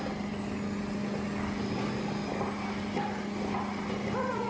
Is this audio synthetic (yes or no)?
no